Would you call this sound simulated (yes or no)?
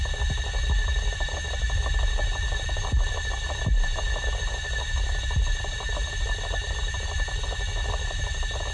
no